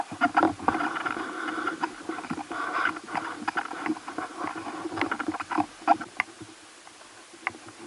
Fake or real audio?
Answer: real